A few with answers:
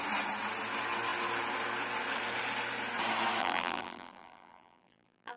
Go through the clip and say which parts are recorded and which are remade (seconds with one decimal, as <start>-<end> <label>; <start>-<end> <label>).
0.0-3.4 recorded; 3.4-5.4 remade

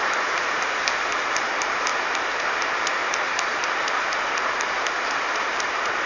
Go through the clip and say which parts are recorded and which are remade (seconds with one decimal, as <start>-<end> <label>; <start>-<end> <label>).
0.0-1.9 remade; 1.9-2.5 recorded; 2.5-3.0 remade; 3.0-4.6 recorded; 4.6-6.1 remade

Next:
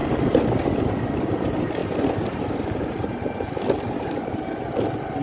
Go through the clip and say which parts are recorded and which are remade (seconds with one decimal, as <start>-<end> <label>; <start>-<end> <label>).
0.0-1.8 recorded; 1.8-4.7 remade; 4.7-5.2 recorded

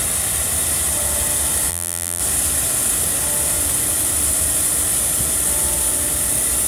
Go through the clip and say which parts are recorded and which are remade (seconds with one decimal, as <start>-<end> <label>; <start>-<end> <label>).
0.0-1.7 recorded; 1.7-2.2 remade; 2.2-6.7 recorded

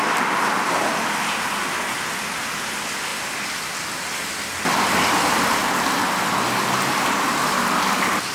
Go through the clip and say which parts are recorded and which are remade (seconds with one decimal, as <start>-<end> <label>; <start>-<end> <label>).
0.0-8.3 recorded

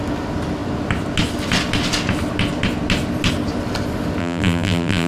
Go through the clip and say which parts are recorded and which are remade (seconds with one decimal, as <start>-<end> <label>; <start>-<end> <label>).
0.0-4.2 recorded; 4.2-5.1 remade